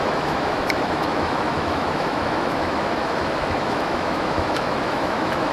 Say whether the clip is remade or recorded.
remade